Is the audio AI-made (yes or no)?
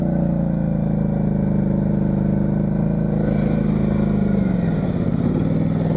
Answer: no